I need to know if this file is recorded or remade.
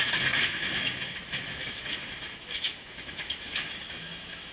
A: remade